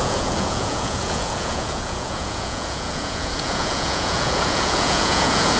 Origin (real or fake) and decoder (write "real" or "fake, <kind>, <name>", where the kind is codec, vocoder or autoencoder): fake, vocoder, Vocos